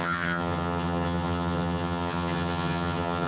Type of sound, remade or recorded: remade